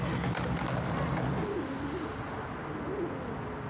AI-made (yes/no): no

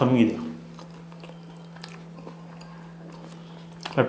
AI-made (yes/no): no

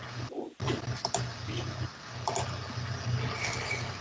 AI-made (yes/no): no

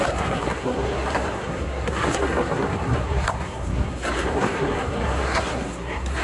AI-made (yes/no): yes